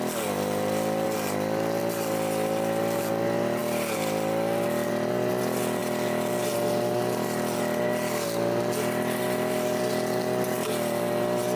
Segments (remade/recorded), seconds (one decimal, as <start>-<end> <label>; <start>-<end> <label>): 0.0-11.6 recorded